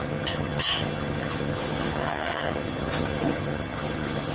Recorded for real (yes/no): no